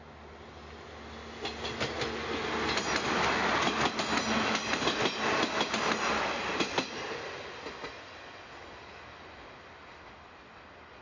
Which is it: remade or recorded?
recorded